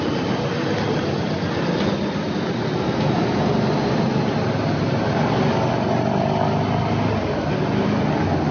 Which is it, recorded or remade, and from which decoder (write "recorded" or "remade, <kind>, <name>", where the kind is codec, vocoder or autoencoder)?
recorded